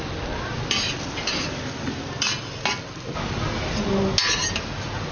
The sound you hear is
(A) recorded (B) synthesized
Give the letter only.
A